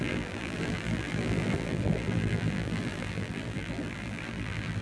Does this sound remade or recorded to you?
remade